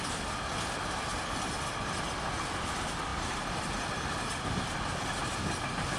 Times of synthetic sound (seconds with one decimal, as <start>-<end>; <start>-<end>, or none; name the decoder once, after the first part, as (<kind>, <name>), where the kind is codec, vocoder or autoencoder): none

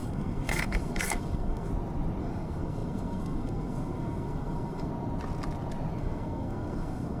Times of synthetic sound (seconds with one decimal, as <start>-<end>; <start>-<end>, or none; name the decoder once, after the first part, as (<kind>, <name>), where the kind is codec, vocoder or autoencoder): 0.0-1.7 (codec, SNAC); 2.2-4.9; 6.0-7.2

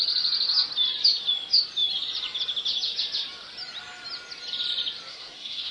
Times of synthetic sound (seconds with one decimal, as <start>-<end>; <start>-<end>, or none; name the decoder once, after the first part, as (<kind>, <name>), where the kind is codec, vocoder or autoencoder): 5.1-5.7 (codec, SNAC)